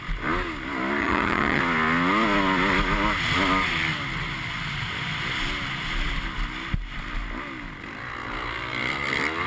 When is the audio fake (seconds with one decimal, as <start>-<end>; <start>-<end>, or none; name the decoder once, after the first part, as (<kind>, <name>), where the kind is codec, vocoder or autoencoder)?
1.0-1.6 (vocoder, HiFi-GAN)